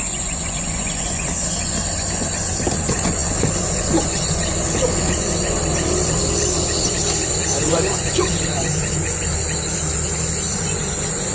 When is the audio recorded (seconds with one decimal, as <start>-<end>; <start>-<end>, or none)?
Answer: 5.6-7.3; 9.4-10.5

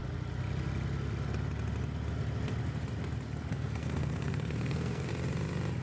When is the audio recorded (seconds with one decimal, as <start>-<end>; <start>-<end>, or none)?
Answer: 0.0-3.5; 5.1-5.8

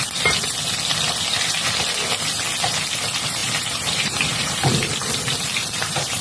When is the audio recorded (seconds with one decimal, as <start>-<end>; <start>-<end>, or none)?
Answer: 0.0-3.4

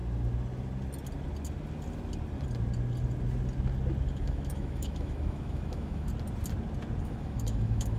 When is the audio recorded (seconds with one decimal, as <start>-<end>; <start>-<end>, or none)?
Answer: 0.0-4.2; 6.1-7.0

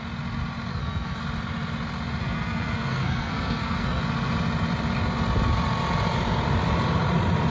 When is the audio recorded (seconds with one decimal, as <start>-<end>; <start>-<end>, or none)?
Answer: 0.0-0.7; 1.2-2.2; 4.0-7.5

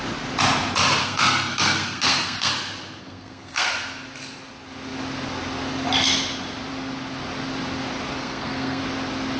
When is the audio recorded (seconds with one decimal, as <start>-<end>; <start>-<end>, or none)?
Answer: 0.0-1.0; 2.5-3.0; 3.7-8.2; 8.8-9.4